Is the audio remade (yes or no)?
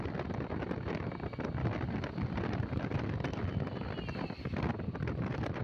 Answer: no